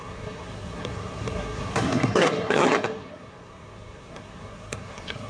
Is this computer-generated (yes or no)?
yes